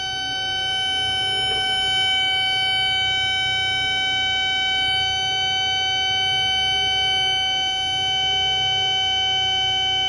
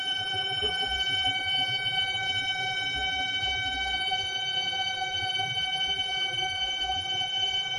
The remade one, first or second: second